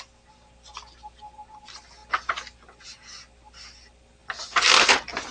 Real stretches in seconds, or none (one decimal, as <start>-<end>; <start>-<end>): 0.0-5.3

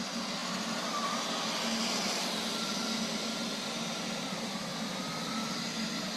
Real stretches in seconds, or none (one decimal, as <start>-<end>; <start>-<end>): 0.0-6.2

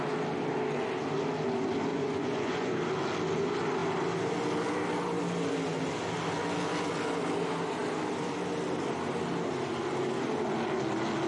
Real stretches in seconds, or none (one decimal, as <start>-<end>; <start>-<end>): 0.0-1.9; 2.7-11.3

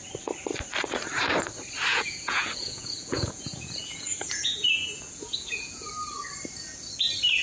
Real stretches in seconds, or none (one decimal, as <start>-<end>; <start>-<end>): 0.0-1.9; 5.9-7.4

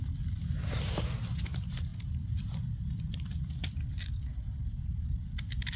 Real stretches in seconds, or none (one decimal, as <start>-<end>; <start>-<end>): 0.0-5.8

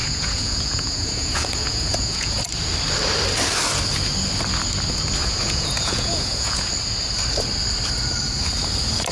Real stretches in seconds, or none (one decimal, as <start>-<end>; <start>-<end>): 2.4-5.2; 6.7-9.1